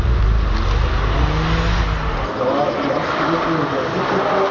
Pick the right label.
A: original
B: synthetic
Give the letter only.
A